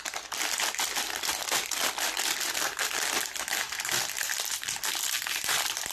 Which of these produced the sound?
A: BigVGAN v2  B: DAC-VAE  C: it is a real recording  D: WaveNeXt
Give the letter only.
A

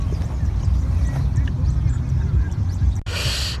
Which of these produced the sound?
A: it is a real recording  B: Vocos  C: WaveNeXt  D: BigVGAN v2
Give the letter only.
A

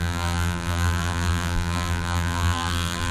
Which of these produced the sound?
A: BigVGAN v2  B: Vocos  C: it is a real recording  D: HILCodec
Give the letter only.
A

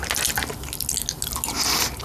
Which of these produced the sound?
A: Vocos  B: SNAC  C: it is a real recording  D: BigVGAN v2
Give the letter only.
C